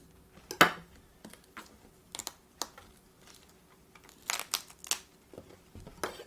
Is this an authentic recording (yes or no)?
yes